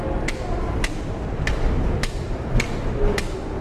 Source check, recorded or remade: recorded